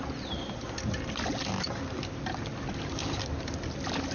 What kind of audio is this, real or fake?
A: real